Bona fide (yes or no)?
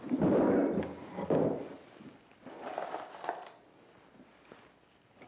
yes